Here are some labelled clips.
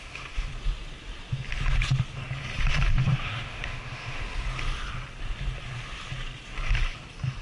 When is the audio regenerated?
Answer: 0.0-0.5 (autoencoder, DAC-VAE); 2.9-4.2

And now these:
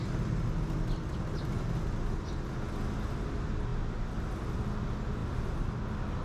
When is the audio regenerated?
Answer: none

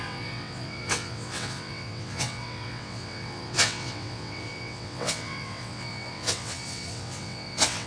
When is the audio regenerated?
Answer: 0.0-7.9 (vocoder, WaveNeXt)

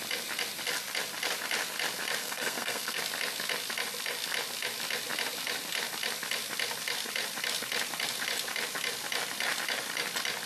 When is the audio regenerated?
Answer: 2.2-3.0 (codec, SNAC)

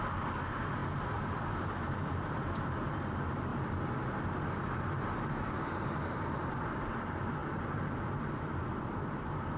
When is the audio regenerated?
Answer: 0.0-3.5 (vocoder, BigVGAN v2); 5.7-9.6

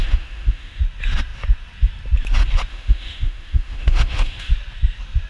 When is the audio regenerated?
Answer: 0.0-0.8 (autoencoder, DAC-VAE); 2.7-4.5

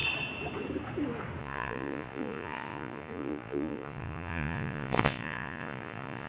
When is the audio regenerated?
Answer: 1.4-6.3 (vocoder, Vocos)

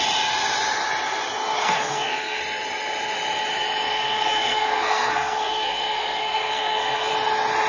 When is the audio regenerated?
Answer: 1.6-2.4 (codec, SNAC); 3.9-7.1